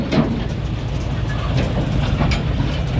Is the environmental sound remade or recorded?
recorded